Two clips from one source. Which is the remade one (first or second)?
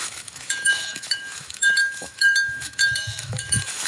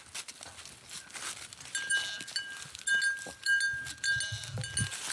first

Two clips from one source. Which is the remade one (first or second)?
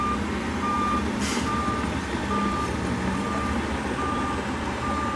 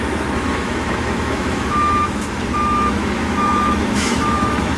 second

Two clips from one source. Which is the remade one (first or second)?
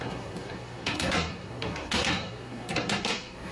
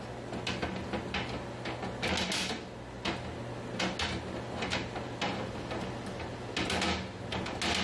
first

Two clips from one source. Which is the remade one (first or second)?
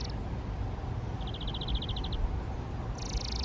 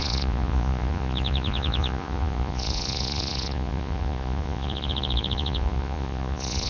second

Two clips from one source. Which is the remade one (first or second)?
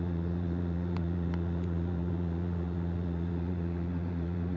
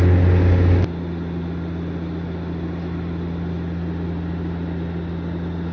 first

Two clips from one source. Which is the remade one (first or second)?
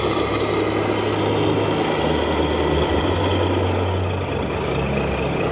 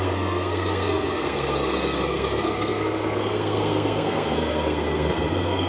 second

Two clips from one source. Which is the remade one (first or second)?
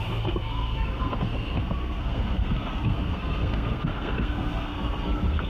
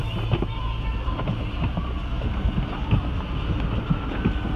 first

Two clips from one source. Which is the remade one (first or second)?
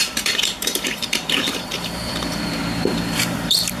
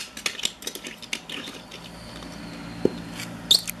first